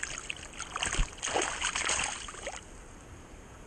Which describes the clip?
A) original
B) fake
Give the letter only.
A